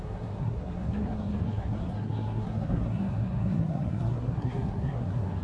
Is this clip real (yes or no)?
no